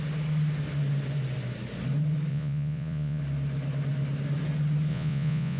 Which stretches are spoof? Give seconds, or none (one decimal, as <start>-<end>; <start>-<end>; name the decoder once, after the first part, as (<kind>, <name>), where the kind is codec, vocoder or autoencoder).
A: 2.3-3.2 (vocoder, Vocos); 4.9-5.6